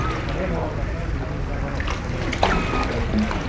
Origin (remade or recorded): recorded